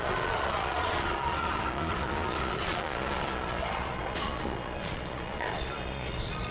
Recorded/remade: remade